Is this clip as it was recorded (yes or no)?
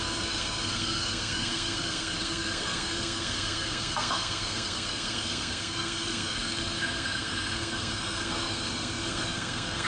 no